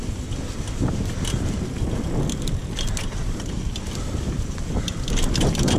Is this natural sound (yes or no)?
yes